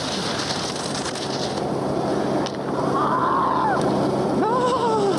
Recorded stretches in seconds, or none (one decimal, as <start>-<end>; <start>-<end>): 0.0-5.2